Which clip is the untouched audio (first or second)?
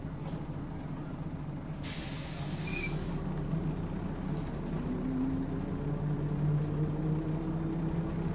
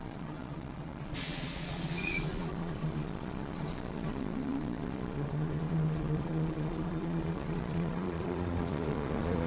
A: first